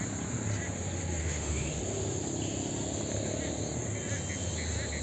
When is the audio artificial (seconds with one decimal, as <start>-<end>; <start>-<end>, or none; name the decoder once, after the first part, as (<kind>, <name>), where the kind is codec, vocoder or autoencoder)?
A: 1.2-1.8 (autoencoder, DAC-VAE)